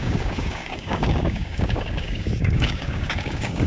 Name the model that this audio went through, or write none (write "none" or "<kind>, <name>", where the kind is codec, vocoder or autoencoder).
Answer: codec, DAC